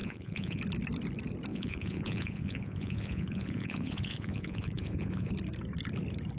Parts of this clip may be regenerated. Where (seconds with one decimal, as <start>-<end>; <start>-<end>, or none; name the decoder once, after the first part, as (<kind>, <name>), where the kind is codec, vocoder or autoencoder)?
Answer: 0.0-0.6 (vocoder, Vocos); 1.5-5.3